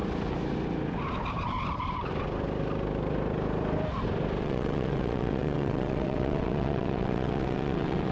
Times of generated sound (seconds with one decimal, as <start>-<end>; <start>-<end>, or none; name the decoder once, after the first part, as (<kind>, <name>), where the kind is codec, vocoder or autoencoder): 4.4-8.1 (vocoder, WaveNeXt)